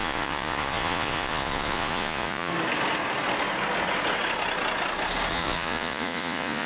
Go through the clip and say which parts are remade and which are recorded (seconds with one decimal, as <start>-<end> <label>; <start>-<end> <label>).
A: 0.0-2.5 remade; 2.5-5.3 recorded; 5.3-6.7 remade